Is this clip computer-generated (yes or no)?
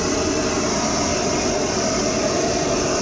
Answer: no